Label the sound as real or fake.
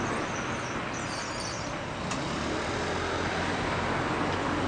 real